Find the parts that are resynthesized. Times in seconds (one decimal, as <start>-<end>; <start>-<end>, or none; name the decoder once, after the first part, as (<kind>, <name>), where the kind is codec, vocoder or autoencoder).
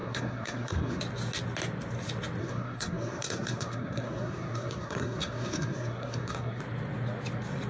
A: 0.0-1.0 (codec, SNAC); 2.4-6.6